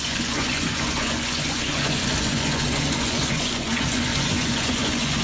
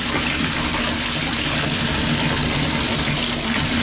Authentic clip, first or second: second